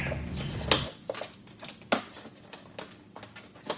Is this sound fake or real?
real